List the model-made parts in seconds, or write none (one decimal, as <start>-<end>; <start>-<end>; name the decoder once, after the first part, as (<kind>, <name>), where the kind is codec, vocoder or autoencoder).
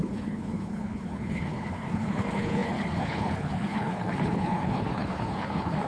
0.0-5.9 (codec, HILCodec)